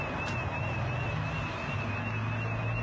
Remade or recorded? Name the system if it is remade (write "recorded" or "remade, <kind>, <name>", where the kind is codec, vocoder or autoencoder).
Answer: recorded